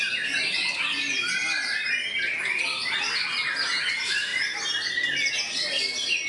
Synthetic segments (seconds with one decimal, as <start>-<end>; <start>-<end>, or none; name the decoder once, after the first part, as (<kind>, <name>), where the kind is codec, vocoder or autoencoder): none